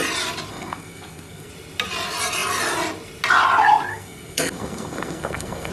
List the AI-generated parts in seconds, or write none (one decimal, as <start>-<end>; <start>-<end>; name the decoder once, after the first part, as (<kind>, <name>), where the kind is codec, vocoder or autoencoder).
0.5-1.5 (codec, SNAC); 3.9-5.7